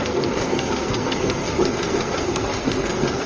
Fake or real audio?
fake